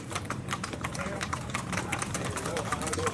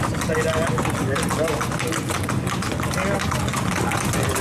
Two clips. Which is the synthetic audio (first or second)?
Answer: first